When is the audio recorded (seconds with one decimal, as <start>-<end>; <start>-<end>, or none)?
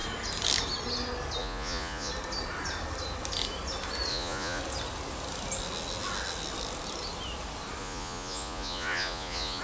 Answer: 0.0-1.4; 2.1-4.1; 4.6-7.8